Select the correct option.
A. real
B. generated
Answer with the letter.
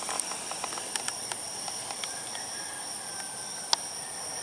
A